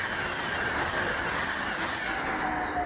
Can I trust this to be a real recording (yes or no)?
yes